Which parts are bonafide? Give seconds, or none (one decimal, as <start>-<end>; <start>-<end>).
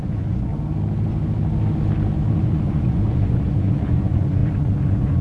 0.5-2.3